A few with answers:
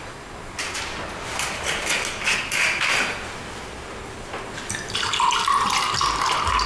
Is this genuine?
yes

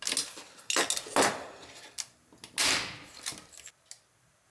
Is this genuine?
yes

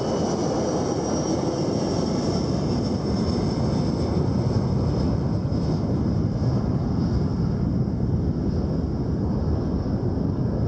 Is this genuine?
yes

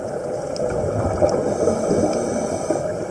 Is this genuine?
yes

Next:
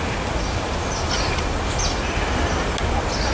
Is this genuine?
yes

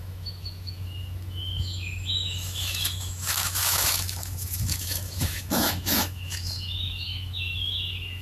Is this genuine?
no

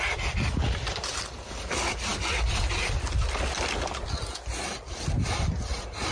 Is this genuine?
yes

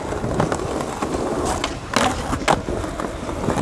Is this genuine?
yes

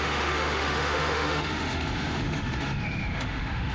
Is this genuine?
no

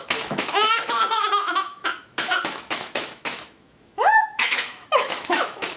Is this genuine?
no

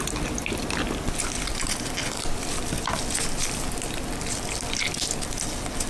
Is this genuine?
yes